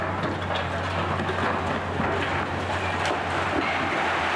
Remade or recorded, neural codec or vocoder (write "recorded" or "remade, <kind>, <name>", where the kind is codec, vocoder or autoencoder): recorded